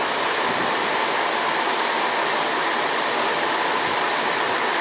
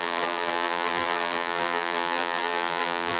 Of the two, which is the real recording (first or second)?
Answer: first